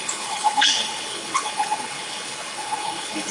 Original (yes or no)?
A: no